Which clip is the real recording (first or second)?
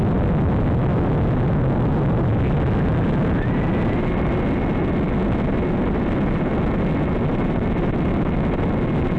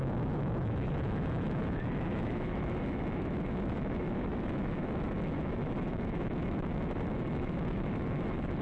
first